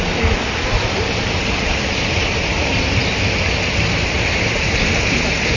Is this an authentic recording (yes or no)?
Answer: yes